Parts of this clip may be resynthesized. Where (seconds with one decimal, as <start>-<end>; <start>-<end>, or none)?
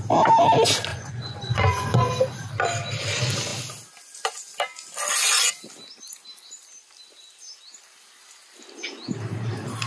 0.9-2.1